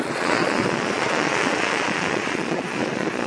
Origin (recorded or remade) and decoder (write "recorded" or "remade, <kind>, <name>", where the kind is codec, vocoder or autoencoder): remade, vocoder, Vocos